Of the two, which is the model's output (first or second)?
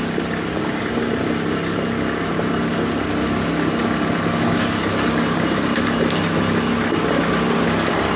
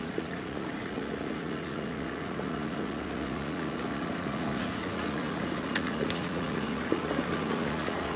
second